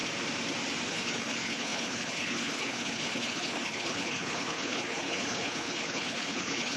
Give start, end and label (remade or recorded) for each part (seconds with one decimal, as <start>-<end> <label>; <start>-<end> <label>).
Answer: 0.0-0.9 recorded; 0.9-6.8 remade